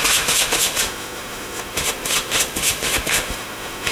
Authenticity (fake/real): fake